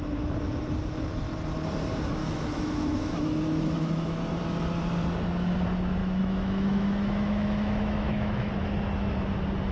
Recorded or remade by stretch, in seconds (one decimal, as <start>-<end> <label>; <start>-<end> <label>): 0.0-2.2 recorded; 2.2-4.4 remade; 4.4-6.0 recorded; 6.0-8.5 remade; 8.5-9.7 recorded